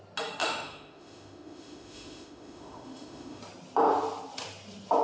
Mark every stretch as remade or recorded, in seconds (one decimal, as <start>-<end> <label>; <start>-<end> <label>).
0.0-0.4 recorded; 0.4-3.4 remade; 3.4-5.0 recorded